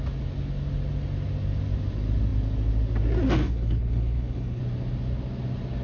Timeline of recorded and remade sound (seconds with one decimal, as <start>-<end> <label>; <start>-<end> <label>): 0.0-3.4 recorded; 3.4-4.6 remade; 4.6-5.8 recorded